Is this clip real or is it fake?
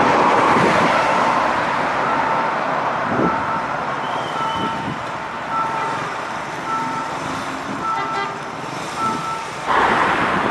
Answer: fake